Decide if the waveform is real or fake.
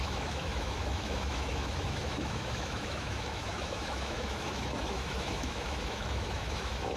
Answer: fake